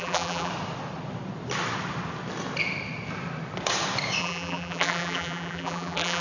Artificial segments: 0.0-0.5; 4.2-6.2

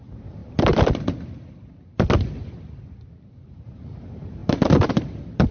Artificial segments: 0.0-0.4; 3.3-5.5

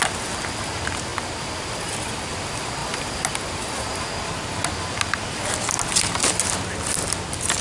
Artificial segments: none

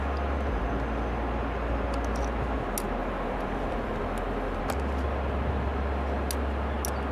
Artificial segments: 3.0-4.6

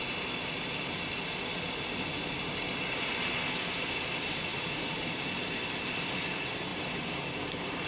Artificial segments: 4.5-5.2; 6.7-7.9